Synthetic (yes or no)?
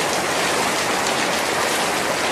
no